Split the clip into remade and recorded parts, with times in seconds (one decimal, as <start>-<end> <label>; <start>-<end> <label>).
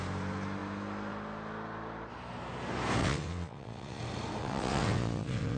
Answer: 0.0-3.0 recorded; 3.0-4.0 remade; 4.0-4.4 recorded; 4.4-5.6 remade